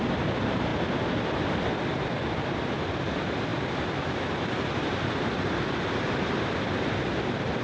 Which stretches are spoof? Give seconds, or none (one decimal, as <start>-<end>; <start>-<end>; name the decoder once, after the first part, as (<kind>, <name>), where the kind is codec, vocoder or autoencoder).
none